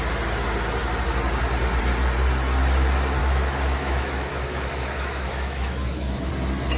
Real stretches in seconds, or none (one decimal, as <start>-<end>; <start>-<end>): 0.0-3.2; 6.3-6.8